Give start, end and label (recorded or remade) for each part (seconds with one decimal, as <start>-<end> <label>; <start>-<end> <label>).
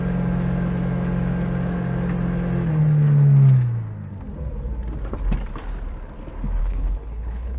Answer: 0.0-6.6 recorded; 6.6-7.6 remade